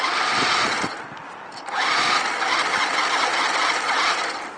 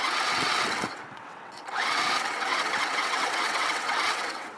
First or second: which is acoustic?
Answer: first